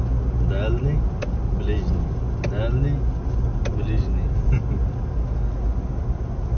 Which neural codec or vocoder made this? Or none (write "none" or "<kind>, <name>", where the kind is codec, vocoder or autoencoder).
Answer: none